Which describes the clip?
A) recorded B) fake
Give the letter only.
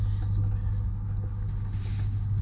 A